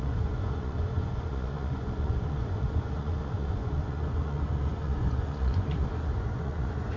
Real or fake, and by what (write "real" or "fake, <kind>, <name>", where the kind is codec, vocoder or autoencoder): fake, vocoder, Vocos